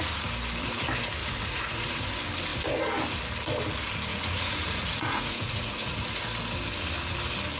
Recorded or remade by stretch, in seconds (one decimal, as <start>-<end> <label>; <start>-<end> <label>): 0.0-1.2 recorded; 1.2-2.1 remade; 2.1-4.1 recorded; 4.1-6.2 remade; 6.2-7.6 recorded